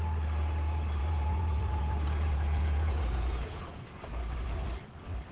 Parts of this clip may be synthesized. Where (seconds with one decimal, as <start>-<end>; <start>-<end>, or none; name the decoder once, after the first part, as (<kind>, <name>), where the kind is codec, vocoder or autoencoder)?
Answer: 1.0-4.2 (vocoder, Vocos)